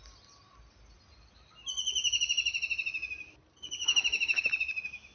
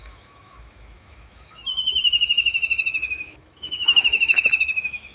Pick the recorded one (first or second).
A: first